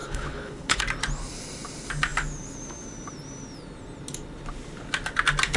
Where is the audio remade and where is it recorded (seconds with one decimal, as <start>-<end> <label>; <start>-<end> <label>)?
0.0-0.8 remade; 0.8-5.6 recorded